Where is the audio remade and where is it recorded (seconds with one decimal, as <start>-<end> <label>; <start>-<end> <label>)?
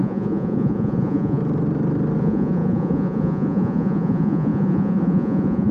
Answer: 0.0-1.4 remade; 1.4-2.2 recorded; 2.2-5.7 remade